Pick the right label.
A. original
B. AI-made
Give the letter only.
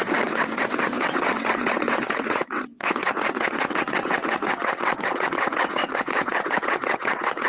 B